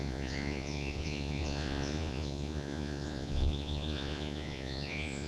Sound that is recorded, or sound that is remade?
remade